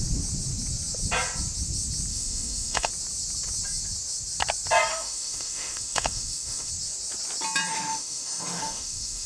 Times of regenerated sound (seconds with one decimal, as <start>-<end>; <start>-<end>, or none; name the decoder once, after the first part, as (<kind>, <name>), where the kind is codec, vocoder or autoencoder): 2.1-2.9 (autoencoder, DAC-VAE); 4.9-6.7; 7.7-9.3